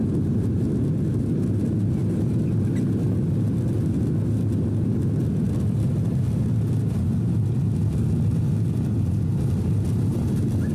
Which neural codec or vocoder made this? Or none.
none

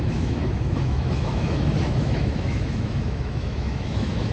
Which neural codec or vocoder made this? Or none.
autoencoder, DAC-VAE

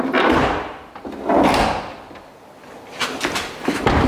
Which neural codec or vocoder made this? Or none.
none